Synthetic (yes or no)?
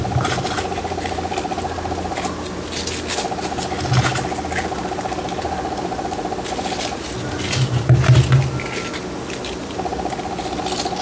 no